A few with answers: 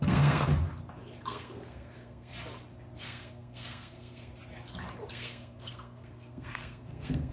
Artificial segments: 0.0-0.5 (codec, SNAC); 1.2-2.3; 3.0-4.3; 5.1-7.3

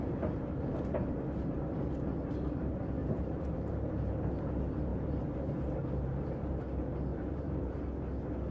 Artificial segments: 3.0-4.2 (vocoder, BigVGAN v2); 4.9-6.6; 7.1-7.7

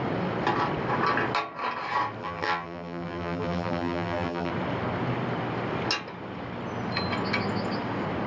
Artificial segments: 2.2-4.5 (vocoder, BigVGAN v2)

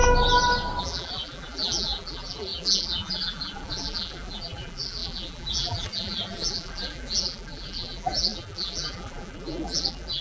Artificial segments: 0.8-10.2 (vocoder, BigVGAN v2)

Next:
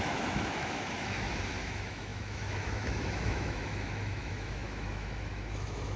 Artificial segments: 0.0-6.0 (autoencoder, DAC-VAE)

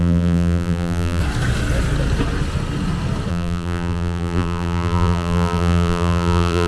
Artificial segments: 0.0-1.2 (vocoder, BigVGAN v2); 3.3-6.7

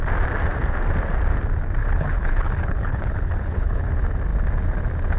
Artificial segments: 1.8-3.8 (codec, HILCodec)

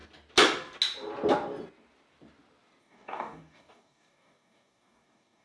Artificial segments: 2.8-5.4 (codec, DAC)